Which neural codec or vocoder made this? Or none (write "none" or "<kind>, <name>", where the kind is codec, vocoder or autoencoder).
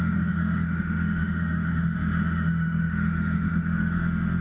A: autoencoder, DAC-VAE